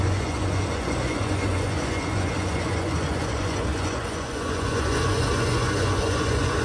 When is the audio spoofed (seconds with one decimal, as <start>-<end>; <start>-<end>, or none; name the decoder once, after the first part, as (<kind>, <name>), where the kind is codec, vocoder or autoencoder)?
0.0-6.6 (vocoder, Vocos)